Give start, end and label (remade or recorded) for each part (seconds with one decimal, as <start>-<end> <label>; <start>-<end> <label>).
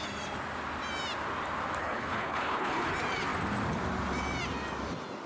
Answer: 0.0-1.8 recorded; 1.8-2.9 remade; 2.9-5.3 recorded